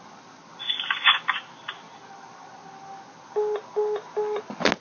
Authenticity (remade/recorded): recorded